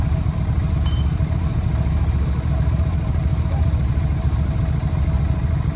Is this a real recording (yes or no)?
yes